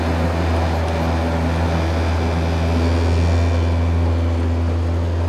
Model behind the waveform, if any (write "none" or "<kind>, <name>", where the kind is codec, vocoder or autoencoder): none